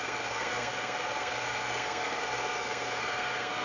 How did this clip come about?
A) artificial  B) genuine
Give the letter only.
A